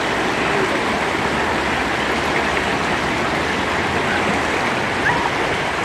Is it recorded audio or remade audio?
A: recorded